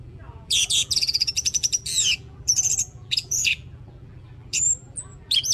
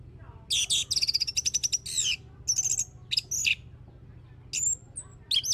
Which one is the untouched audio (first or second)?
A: second